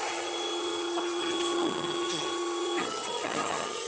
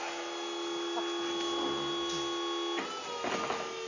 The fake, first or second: first